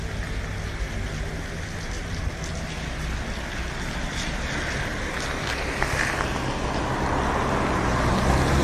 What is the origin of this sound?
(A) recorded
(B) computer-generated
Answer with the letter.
A